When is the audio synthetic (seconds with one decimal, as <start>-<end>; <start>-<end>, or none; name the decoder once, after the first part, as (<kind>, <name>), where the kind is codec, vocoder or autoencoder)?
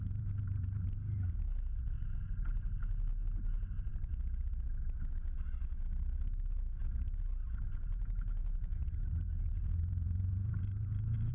7.9-11.3 (vocoder, Vocos)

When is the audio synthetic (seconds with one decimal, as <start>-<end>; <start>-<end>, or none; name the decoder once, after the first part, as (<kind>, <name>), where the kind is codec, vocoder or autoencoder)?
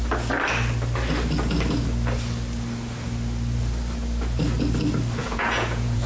5.2-6.1 (vocoder, Vocos)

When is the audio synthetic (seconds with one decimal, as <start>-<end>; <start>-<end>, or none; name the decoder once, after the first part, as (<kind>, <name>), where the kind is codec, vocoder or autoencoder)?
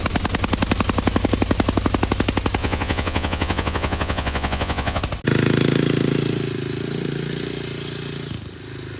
2.6-5.0 (vocoder, Vocos)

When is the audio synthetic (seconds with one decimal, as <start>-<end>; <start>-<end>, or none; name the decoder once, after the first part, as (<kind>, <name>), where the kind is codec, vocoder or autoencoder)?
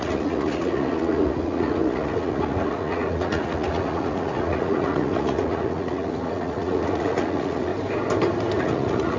0.0-7.7 (vocoder, Vocos); 8.6-9.2